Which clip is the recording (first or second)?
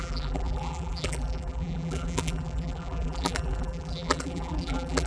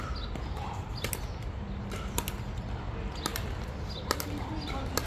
second